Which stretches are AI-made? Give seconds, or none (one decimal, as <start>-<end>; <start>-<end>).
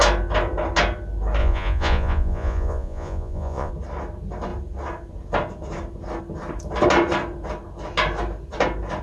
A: 1.4-3.7